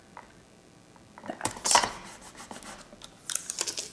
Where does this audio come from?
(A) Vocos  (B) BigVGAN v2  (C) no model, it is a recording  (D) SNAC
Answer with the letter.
C